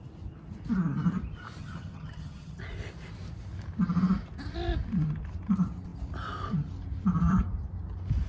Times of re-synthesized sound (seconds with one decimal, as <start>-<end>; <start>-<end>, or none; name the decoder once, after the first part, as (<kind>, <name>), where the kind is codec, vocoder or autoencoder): 1.6-2.6 (vocoder, HiFi-GAN)